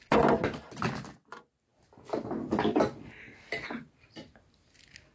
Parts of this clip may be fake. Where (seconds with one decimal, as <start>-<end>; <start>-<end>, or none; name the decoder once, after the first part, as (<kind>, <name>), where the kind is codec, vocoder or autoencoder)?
none